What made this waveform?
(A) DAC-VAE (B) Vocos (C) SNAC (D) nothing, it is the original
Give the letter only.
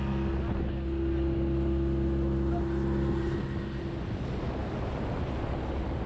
D